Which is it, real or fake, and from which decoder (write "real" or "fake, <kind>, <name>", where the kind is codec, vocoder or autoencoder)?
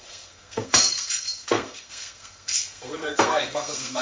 fake, codec, SNAC